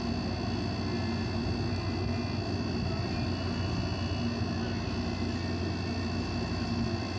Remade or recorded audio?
recorded